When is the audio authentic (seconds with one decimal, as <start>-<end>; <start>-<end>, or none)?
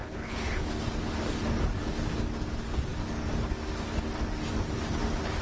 0.7-5.4